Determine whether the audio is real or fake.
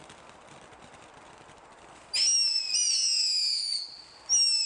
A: real